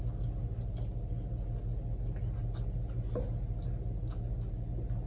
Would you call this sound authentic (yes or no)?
yes